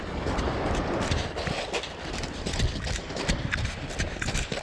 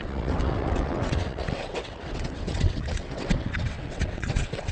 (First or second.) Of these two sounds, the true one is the first